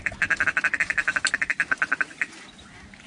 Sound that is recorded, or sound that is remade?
recorded